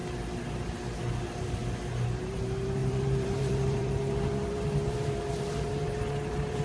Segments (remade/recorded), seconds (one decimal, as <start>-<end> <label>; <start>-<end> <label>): 0.0-1.2 recorded; 1.2-1.6 remade; 1.6-2.2 recorded; 2.2-6.6 remade